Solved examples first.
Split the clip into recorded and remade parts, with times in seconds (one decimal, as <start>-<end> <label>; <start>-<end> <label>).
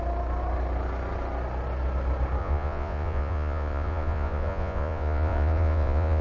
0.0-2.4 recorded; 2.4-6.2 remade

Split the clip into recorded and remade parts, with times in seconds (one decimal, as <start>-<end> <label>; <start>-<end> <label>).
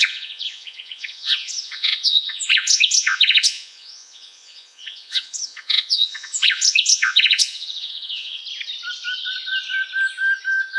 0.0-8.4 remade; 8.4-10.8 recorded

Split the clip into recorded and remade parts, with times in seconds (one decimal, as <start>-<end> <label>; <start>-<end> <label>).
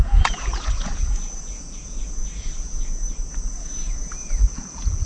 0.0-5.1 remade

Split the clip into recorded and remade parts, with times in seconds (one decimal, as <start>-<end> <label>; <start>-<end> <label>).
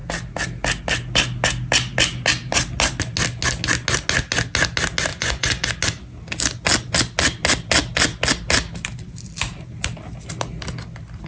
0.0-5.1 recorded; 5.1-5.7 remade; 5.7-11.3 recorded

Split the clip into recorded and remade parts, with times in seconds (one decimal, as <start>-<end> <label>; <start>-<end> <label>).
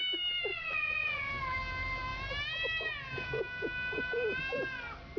0.0-0.5 recorded; 0.5-1.3 remade; 1.3-5.2 recorded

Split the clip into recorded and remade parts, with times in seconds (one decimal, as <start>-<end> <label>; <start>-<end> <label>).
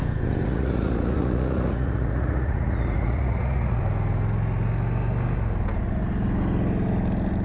0.0-0.4 recorded; 0.4-3.8 remade; 3.8-7.4 recorded